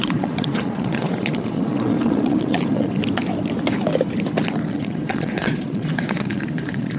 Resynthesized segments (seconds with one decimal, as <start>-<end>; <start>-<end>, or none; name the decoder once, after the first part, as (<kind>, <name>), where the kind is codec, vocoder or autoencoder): 0.0-3.0 (vocoder, Vocos); 4.7-7.0